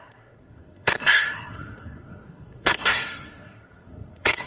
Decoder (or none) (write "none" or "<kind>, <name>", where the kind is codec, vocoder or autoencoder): codec, SNAC